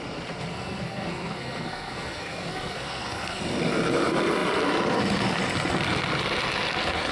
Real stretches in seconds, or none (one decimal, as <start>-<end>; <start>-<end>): 0.0-0.5; 3.4-7.1